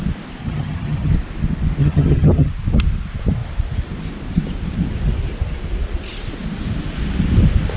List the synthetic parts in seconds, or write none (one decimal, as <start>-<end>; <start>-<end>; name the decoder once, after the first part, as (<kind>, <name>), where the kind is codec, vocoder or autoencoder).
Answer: 0.4-1.1 (vocoder, HiFi-GAN); 1.8-2.5